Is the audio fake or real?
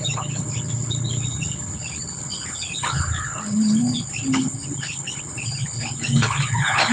fake